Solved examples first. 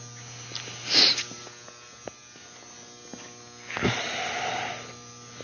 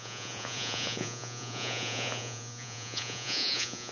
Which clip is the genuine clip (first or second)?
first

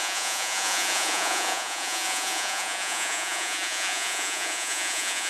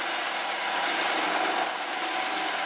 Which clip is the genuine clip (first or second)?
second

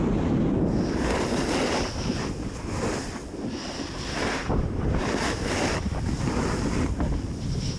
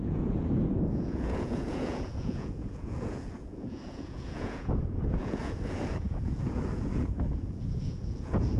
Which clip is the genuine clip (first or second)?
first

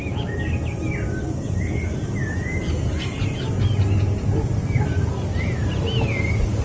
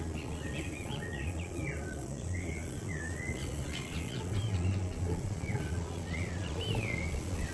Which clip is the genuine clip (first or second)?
first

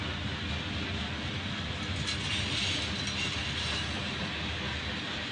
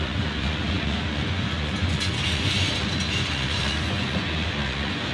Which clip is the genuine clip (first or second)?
first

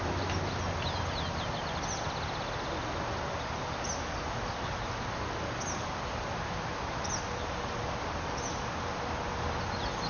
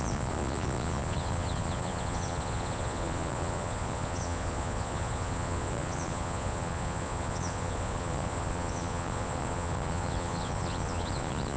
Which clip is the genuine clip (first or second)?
first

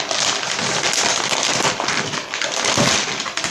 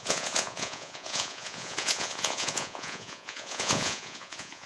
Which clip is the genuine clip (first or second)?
first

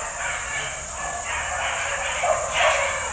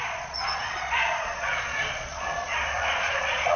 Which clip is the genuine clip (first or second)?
first